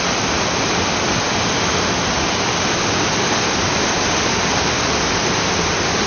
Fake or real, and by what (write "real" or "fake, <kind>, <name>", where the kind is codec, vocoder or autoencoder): real